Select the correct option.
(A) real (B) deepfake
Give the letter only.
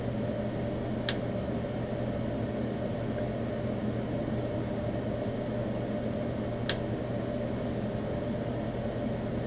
A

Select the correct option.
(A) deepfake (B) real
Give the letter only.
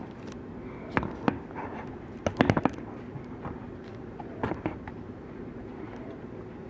B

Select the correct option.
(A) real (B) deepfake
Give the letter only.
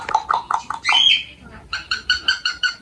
A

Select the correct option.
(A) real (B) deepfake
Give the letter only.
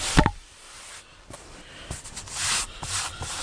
B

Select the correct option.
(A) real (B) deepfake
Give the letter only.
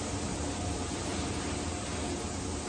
B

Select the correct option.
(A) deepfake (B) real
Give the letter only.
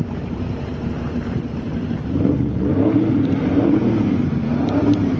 A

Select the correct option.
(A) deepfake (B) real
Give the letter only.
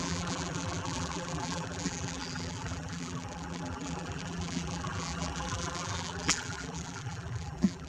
A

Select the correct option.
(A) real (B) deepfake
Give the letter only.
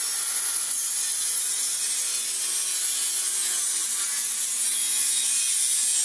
A